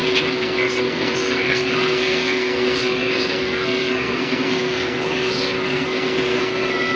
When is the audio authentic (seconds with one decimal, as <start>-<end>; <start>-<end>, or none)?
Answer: none